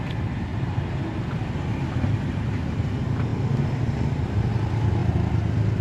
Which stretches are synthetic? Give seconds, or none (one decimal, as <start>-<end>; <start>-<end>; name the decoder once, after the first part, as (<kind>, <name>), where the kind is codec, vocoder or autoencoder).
none